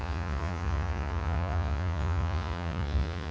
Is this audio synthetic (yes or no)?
yes